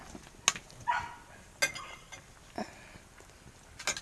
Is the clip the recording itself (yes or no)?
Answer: yes